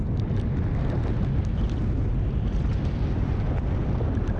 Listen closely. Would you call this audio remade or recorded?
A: recorded